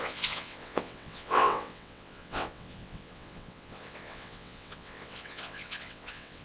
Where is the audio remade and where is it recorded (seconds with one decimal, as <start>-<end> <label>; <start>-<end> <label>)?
0.0-6.4 remade